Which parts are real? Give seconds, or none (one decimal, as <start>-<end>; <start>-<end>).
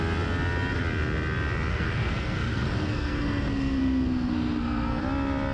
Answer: 0.0-1.7; 5.0-5.5